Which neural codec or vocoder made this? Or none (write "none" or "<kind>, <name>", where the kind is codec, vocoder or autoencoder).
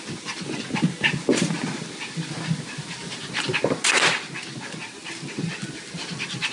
none